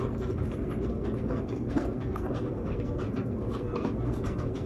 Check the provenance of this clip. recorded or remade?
remade